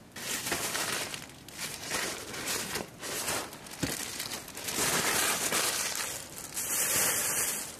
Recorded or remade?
recorded